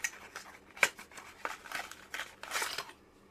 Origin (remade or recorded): recorded